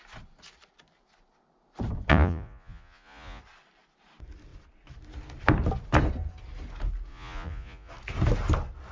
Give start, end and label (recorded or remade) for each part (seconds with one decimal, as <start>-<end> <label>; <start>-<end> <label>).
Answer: 0.0-2.1 recorded; 2.1-3.4 remade; 3.4-7.1 recorded; 7.1-7.9 remade; 7.9-8.9 recorded